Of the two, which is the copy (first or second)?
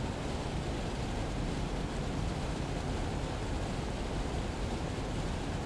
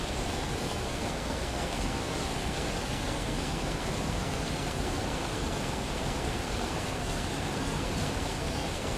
second